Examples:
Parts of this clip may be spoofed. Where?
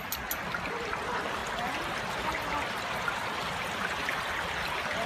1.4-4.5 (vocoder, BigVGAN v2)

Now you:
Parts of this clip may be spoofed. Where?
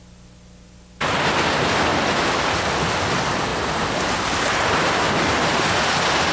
none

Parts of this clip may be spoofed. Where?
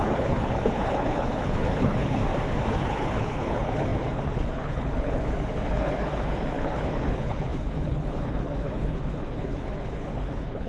0.0-2.2 (codec, HILCodec); 2.7-10.7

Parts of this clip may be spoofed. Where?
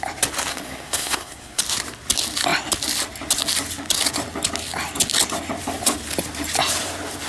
0.5-1.6 (codec, SNAC)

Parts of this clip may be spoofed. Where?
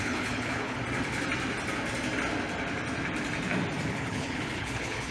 0.0-0.8 (codec, HILCodec); 3.9-5.1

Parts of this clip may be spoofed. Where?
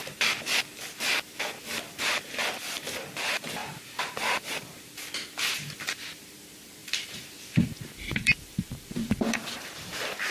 3.6-5.1 (vocoder, BigVGAN v2); 6.8-9.7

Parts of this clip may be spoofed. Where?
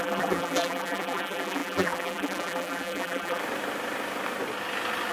0.0-3.4 (vocoder, BigVGAN v2)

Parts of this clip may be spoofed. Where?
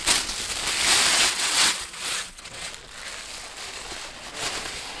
1.1-2.7 (vocoder, WaveNeXt)